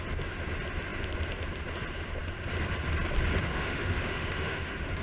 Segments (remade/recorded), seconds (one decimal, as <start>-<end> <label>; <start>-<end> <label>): 0.0-3.5 recorded; 3.5-5.0 remade

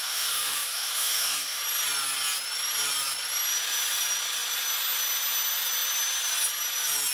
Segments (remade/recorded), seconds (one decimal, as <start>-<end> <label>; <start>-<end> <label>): 0.0-1.6 remade; 1.6-7.1 recorded

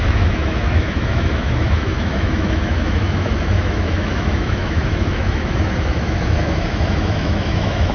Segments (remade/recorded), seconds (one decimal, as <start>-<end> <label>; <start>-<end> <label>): 0.0-7.9 remade